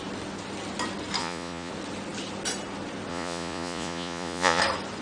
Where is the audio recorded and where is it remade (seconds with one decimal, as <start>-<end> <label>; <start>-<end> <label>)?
0.0-1.2 recorded; 1.2-1.7 remade; 1.7-3.1 recorded; 3.1-4.6 remade; 4.6-5.0 recorded